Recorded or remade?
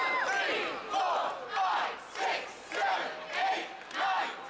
recorded